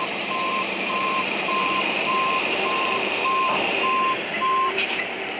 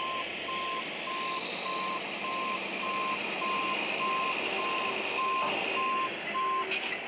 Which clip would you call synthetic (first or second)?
first